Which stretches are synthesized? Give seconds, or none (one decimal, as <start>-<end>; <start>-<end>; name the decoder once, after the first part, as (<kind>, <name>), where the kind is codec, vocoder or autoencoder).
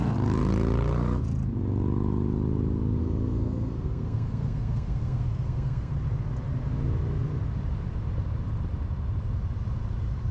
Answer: 3.0-5.9 (codec, SNAC)